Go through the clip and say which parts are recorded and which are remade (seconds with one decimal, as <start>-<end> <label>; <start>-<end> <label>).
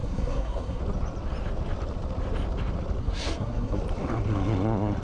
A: 0.0-0.8 remade; 0.8-3.0 recorded; 3.0-3.8 remade; 3.8-5.0 recorded